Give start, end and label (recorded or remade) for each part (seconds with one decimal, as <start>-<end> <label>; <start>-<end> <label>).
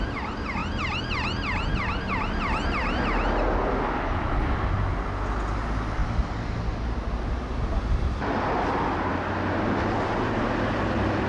0.0-11.3 recorded